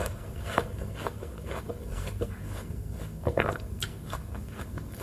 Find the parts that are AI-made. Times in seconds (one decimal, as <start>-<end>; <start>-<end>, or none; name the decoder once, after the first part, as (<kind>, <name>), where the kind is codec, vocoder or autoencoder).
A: 0.0-5.0 (codec, SNAC)

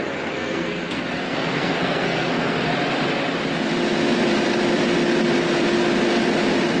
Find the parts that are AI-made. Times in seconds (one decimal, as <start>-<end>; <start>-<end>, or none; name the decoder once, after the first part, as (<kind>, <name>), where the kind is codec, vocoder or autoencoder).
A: 0.0-2.7 (codec, SNAC)

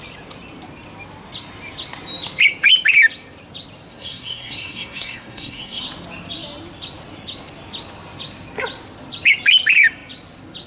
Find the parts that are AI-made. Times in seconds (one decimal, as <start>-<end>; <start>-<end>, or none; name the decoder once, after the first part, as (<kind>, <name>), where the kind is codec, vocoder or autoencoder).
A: 3.9-5.8 (codec, SNAC)

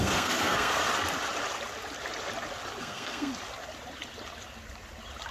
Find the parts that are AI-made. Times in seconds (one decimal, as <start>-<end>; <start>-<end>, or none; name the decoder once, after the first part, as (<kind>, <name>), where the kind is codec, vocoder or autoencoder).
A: 0.0-0.9 (codec, SNAC); 2.8-3.3

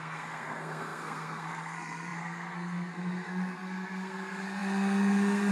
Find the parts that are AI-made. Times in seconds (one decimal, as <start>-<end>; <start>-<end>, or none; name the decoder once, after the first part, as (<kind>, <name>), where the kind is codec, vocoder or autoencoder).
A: 0.0-5.5 (codec, SNAC)